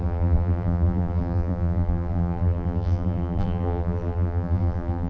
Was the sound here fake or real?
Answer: fake